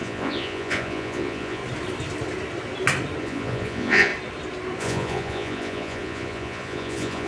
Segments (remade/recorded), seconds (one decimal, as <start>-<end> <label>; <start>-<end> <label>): 0.0-1.6 remade; 1.6-3.2 recorded; 3.2-4.1 remade; 4.1-4.8 recorded; 4.8-7.3 remade